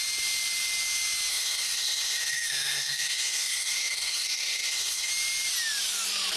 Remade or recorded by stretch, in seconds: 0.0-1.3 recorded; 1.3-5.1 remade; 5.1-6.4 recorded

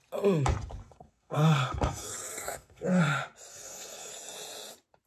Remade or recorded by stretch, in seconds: 0.0-0.8 recorded; 0.8-3.0 remade; 3.0-3.5 recorded; 3.5-4.1 remade; 4.1-5.1 recorded

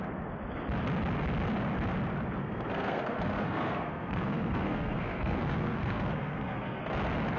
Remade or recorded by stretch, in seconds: 0.0-2.4 recorded; 2.4-6.8 remade; 6.8-7.4 recorded

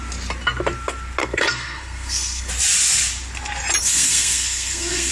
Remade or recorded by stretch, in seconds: 0.0-1.2 recorded; 1.2-2.5 remade; 2.5-3.8 recorded; 3.8-5.1 remade

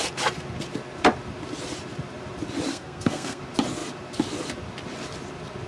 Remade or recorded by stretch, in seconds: 0.0-2.7 recorded; 2.7-3.4 remade; 3.4-5.7 recorded